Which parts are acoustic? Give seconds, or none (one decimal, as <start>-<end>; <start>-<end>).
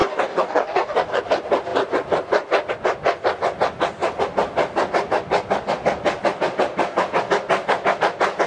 1.2-8.5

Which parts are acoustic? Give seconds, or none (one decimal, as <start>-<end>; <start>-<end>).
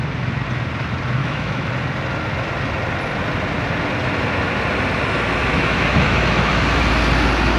0.0-1.2; 1.7-5.5; 6.5-7.6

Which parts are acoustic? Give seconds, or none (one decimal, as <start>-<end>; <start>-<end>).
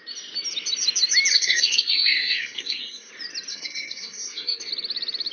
0.0-1.3; 3.1-3.5; 4.7-5.3